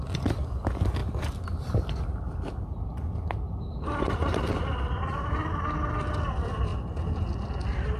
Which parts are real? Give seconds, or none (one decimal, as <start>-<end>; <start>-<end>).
0.0-8.0